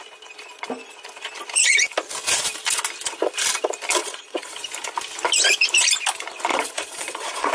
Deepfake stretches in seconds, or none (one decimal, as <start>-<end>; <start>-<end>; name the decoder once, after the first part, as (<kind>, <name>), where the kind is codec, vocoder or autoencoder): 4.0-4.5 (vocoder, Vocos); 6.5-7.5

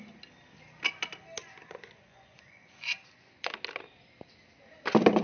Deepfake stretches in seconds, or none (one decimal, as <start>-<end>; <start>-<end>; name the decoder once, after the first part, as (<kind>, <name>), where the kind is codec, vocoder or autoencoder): 1.4-3.5 (vocoder, Vocos)

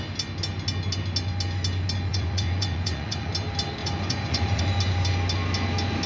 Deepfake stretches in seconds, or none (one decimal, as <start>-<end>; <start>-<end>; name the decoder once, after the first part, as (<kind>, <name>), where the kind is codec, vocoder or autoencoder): 2.1-3.3 (vocoder, Vocos); 3.8-4.6

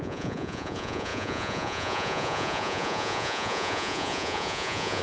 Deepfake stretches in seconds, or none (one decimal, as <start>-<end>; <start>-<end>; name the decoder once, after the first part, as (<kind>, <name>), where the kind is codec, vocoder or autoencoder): 0.0-5.0 (vocoder, Vocos)